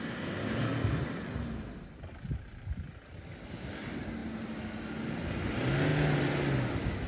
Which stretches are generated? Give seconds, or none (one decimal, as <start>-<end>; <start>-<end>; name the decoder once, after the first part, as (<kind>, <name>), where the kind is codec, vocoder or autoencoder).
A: none